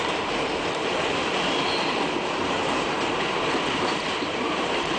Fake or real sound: real